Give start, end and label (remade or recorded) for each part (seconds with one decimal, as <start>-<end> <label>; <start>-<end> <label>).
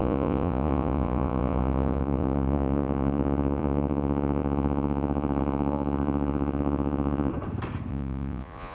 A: 0.0-7.3 remade; 7.3-7.9 recorded; 7.9-8.7 remade